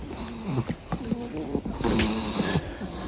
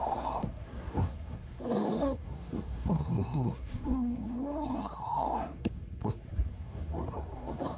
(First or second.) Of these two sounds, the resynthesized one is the second